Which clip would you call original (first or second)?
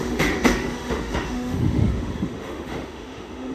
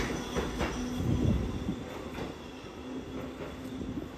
second